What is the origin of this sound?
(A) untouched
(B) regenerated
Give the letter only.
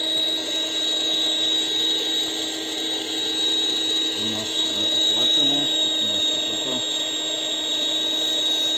A